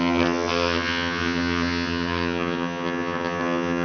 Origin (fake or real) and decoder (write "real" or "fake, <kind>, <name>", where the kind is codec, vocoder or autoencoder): fake, vocoder, HiFi-GAN